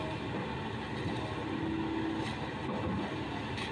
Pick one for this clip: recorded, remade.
recorded